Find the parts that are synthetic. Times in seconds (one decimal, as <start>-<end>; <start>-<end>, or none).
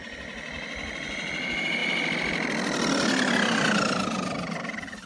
none